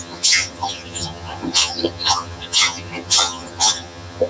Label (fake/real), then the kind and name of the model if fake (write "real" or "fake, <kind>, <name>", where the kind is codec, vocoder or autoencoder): fake, vocoder, HiFi-GAN